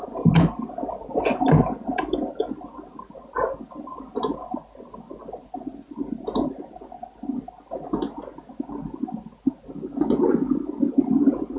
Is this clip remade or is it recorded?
recorded